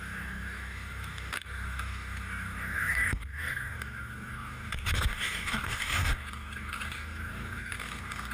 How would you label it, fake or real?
fake